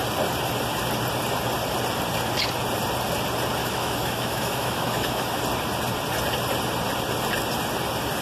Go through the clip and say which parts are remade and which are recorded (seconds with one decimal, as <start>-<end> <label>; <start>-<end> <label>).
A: 0.0-3.6 recorded; 3.6-5.4 remade; 5.4-8.2 recorded